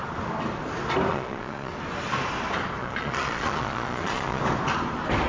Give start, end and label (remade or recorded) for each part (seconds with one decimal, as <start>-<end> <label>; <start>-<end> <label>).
0.0-1.1 recorded; 1.1-1.7 remade; 1.7-2.8 recorded; 2.8-4.4 remade; 4.4-5.3 recorded